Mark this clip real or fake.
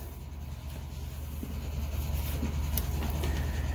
real